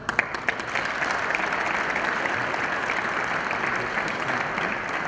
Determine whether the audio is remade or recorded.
recorded